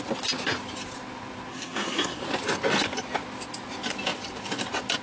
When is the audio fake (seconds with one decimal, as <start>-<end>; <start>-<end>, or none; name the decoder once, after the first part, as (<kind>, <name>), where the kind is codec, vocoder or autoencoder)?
1.5-2.2 (codec, SNAC)